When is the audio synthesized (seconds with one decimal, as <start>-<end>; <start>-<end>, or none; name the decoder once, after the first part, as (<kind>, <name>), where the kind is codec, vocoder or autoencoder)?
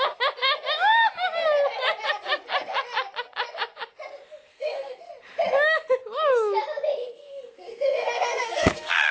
4.5-5.1 (codec, SNAC); 7.0-9.1